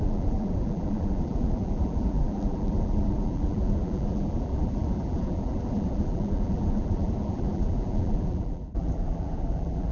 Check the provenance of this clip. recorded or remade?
remade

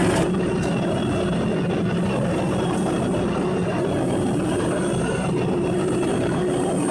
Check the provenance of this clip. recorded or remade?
recorded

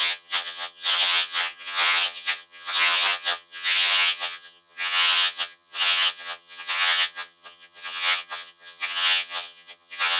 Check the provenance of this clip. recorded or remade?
remade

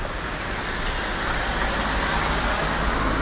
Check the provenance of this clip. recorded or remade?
recorded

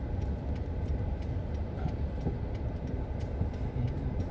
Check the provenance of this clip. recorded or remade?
remade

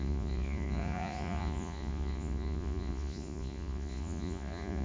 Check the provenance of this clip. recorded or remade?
remade